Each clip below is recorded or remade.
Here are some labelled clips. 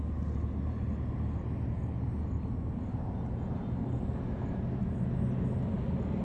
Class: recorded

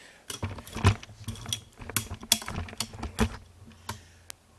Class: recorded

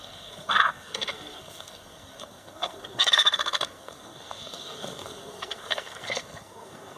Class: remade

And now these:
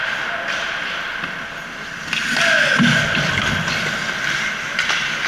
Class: recorded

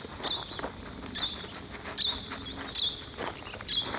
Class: recorded